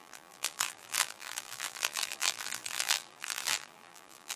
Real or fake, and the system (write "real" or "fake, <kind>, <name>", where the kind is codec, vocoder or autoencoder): fake, vocoder, BigVGAN v2